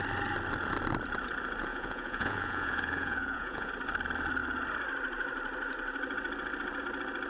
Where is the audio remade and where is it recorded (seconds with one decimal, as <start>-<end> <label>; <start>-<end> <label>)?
0.0-1.7 recorded; 1.7-3.7 remade; 3.7-7.3 recorded